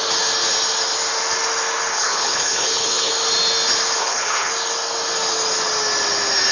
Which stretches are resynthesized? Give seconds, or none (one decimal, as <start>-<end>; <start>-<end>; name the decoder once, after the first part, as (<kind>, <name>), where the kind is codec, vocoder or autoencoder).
1.9-3.1 (codec, HILCodec); 4.0-4.5